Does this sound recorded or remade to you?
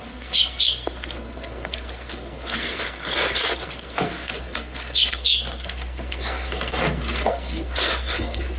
remade